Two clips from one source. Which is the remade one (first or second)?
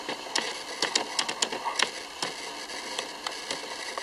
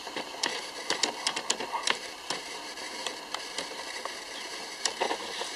second